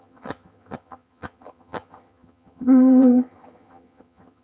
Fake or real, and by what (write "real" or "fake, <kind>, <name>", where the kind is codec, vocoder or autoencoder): fake, vocoder, HiFi-GAN